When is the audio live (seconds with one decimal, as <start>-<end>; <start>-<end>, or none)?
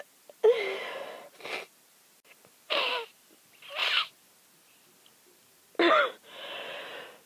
0.0-7.3